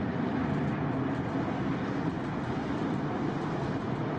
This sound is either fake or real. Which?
real